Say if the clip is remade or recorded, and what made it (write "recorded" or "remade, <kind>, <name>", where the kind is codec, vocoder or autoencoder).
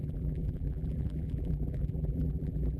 remade, vocoder, BigVGAN v2